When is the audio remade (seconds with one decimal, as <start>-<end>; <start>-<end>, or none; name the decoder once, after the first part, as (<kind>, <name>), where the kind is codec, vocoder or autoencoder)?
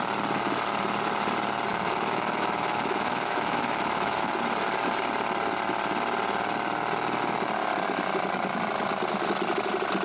1.7-4.3 (autoencoder, DAC-VAE)